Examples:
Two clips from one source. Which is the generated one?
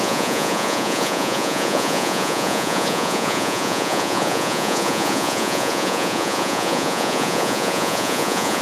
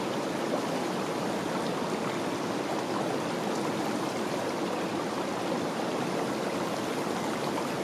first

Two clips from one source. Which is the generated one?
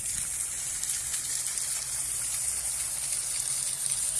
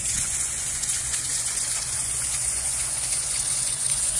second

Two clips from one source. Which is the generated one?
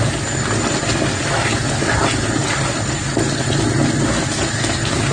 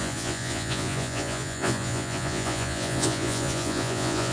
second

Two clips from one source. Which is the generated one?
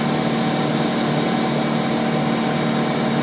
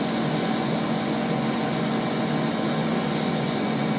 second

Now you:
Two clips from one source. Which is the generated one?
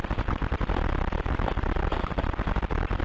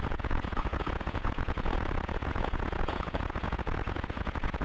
second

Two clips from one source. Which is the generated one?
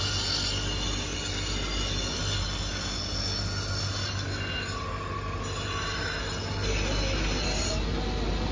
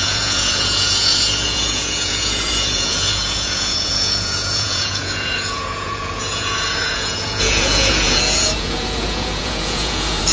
second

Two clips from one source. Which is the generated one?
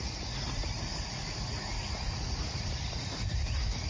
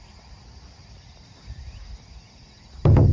first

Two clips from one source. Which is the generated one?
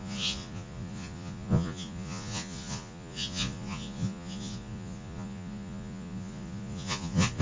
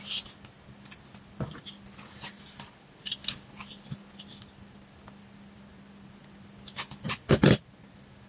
first